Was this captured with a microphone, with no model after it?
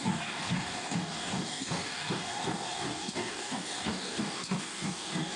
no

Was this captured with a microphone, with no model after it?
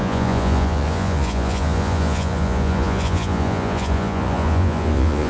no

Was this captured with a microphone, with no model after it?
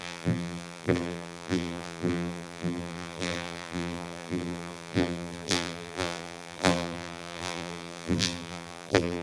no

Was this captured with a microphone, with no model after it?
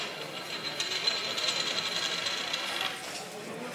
yes